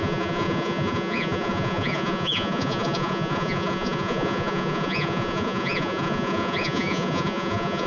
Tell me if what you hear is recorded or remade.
remade